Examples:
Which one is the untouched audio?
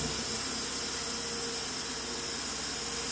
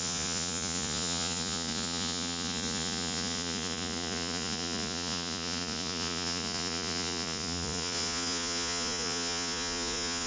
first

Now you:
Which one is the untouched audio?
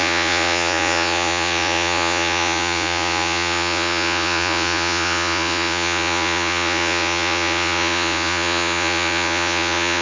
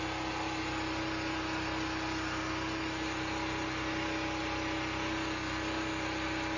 second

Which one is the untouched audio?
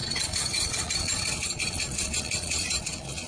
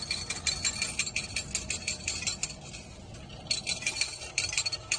second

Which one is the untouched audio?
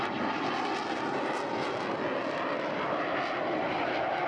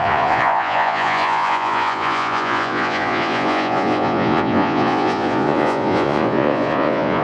first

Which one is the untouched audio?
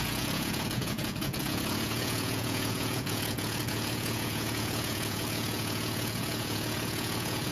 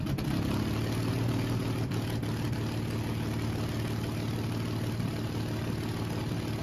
second